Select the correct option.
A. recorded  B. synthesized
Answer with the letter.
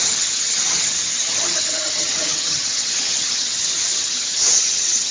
B